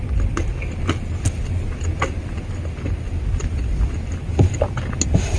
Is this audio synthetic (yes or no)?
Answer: no